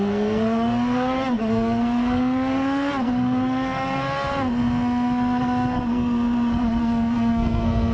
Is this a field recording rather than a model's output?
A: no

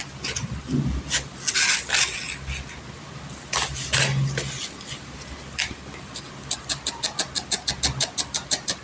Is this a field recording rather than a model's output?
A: yes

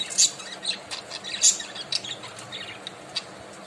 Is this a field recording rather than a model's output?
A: yes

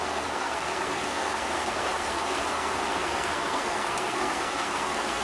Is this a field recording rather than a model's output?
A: no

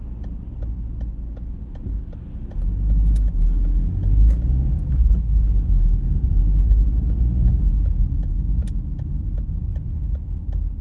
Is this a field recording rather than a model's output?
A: yes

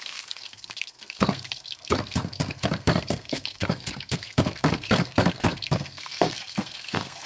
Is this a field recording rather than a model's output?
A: no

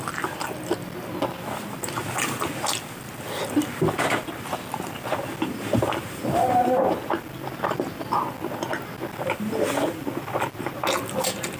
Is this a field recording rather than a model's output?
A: yes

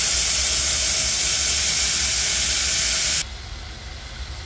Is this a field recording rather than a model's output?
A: yes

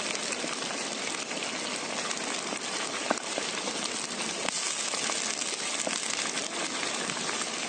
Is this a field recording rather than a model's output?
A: yes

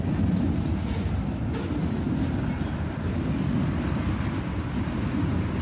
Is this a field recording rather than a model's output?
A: yes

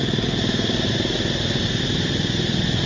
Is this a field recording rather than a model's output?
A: yes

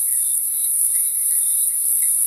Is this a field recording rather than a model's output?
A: no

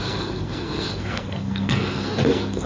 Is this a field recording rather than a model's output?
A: no